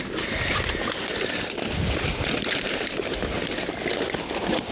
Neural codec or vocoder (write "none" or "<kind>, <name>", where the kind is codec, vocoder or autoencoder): none